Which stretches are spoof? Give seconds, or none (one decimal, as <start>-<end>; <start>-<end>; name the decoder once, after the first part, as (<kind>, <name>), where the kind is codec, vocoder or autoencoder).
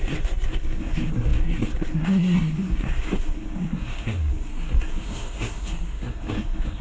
0.0-6.8 (codec, SNAC)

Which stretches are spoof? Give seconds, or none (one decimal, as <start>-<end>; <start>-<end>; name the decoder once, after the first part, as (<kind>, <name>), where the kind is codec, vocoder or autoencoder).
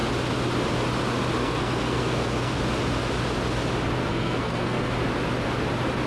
1.4-2.6 (codec, SNAC); 4.0-4.9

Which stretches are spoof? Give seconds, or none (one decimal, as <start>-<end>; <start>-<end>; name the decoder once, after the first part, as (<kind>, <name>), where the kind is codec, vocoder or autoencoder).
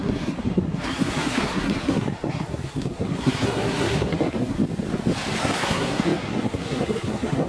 0.0-4.6 (codec, SNAC); 5.4-7.5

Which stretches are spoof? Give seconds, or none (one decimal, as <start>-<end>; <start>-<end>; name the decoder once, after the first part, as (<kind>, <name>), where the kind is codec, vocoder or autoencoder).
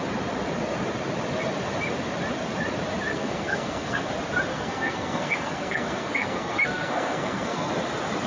3.1-4.1 (codec, SNAC); 4.5-7.7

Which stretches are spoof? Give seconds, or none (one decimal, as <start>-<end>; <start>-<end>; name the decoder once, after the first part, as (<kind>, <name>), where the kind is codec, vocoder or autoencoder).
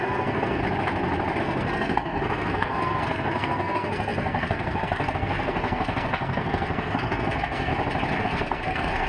0.0-0.6 (codec, SNAC); 1.4-7.7; 8.2-9.1